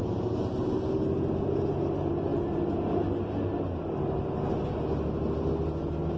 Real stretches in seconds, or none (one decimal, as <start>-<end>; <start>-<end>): 0.0-6.2